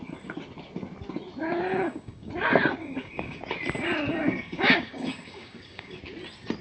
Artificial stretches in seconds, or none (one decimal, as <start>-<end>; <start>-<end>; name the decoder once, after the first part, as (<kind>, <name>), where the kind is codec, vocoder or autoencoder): 1.7-2.3 (codec, DAC); 2.8-3.4; 4.1-6.0